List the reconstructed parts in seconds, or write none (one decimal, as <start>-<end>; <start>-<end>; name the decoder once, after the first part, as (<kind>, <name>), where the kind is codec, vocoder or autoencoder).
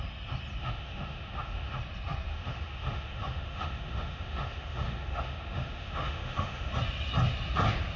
0.6-1.8 (autoencoder, DAC-VAE); 2.3-6.7